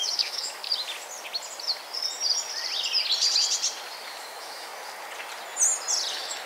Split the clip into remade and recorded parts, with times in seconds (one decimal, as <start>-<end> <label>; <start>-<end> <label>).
0.0-0.6 remade; 0.6-4.1 recorded; 4.1-4.7 remade; 4.7-6.1 recorded; 6.1-6.5 remade